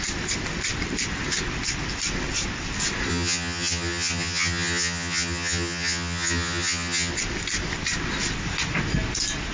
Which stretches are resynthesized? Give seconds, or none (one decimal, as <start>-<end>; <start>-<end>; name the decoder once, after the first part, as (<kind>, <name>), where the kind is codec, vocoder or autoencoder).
3.1-7.1 (vocoder, HiFi-GAN)